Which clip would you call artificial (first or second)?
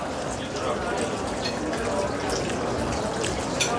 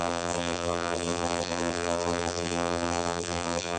second